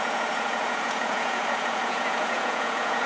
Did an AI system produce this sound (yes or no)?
yes